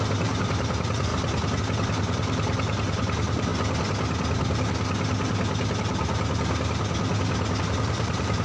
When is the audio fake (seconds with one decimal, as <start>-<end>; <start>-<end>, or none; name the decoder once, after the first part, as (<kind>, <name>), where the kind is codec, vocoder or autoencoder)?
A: 0.0-1.1 (vocoder, BigVGAN v2); 1.6-3.5; 7.6-8.4